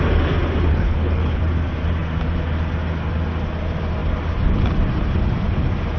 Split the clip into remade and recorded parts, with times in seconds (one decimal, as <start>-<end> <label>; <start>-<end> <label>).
0.0-0.7 recorded; 0.7-1.4 remade; 1.4-6.0 recorded